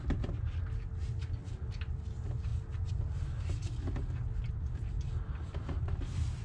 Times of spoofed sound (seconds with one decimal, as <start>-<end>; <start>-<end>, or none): none